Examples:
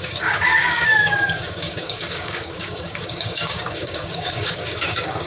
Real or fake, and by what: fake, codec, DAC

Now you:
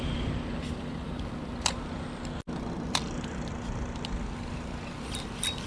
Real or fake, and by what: real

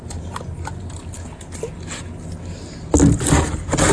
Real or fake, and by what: real